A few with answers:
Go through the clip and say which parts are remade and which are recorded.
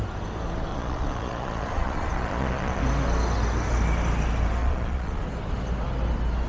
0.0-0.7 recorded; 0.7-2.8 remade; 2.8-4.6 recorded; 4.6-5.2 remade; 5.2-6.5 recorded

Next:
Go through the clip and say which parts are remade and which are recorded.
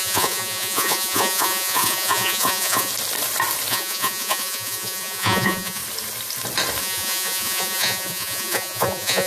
0.0-2.9 remade; 2.9-3.7 recorded; 3.7-5.8 remade; 5.8-6.8 recorded; 6.8-9.3 remade